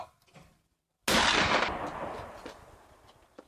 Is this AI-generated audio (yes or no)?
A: no